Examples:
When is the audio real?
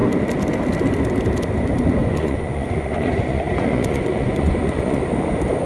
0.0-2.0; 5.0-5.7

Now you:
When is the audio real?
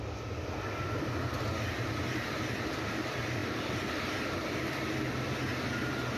0.0-3.4; 4.8-6.2